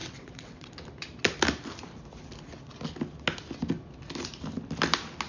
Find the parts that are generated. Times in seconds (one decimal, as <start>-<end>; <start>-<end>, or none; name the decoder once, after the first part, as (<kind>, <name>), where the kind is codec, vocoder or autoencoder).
0.0-0.7 (vocoder, WaveNeXt)